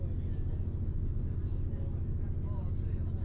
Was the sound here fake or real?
real